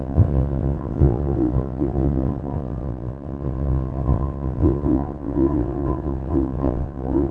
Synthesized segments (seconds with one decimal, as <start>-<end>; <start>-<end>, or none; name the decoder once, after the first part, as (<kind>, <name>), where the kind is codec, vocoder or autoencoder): 0.0-7.3 (vocoder, WaveNeXt)